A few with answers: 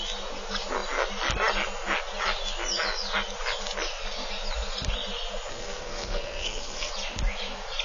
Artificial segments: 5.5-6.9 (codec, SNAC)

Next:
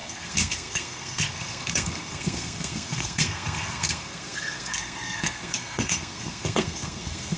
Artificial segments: 0.0-7.4 (codec, SNAC)

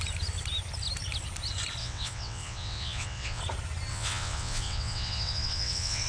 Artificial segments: 1.8-3.4 (vocoder, WaveNeXt); 3.9-6.1

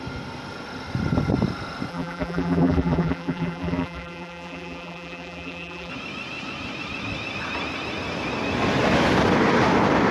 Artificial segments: 1.9-5.9 (vocoder, BigVGAN v2)

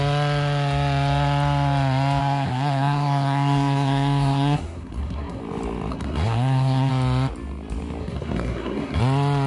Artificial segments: 2.2-5.4 (codec, SNAC); 5.9-6.9; 8.0-9.0

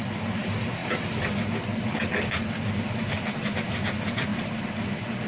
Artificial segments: 0.0-0.8 (vocoder, BigVGAN v2); 2.8-4.3